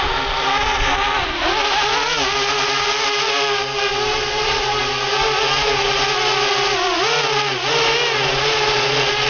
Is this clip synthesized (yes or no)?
no